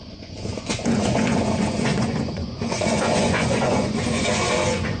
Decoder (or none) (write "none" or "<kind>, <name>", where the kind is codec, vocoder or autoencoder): vocoder, Vocos